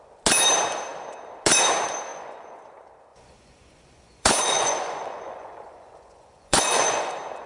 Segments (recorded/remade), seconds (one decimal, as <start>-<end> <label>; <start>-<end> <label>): 0.0-2.1 recorded; 2.1-2.6 remade; 2.6-3.1 recorded; 3.1-7.1 remade; 7.1-7.5 recorded